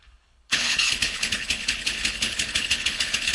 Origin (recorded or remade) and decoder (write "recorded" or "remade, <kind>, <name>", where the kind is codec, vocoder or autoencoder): remade, codec, HILCodec